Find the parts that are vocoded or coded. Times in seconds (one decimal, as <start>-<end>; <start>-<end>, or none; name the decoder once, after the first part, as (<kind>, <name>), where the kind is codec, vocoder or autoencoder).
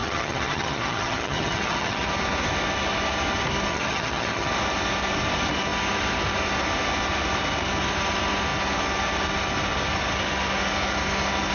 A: 0.0-2.1 (vocoder, HiFi-GAN); 3.7-4.5